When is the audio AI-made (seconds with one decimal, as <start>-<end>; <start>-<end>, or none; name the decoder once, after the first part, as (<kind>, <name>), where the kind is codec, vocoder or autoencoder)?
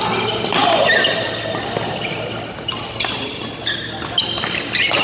none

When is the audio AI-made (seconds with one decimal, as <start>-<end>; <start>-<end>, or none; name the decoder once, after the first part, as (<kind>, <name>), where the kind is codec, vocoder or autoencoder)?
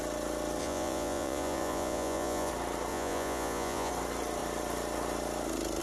0.6-2.5 (vocoder, Vocos); 2.9-3.9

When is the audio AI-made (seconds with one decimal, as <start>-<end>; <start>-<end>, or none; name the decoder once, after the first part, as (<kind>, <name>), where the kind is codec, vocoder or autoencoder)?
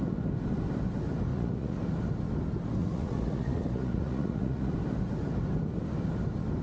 1.3-1.8 (vocoder, Vocos); 2.8-4.7